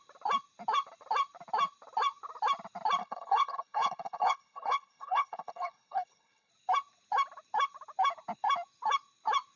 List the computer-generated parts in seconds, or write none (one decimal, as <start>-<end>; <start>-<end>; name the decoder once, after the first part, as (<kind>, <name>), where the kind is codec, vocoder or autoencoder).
3.0-6.5 (codec, HILCodec)